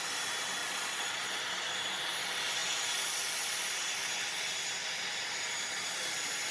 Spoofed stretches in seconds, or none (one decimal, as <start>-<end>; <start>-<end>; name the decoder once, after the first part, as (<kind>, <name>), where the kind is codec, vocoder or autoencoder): 0.6-1.4 (vocoder, Vocos)